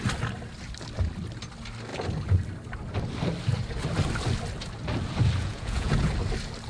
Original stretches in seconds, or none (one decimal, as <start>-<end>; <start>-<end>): 0.0-5.4; 6.1-6.7